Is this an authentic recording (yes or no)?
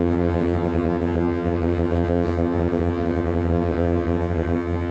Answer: no